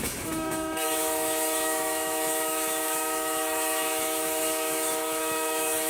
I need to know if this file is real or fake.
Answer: fake